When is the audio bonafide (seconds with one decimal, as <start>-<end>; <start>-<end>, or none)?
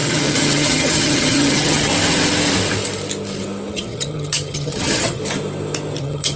1.9-3.7; 5.2-6.0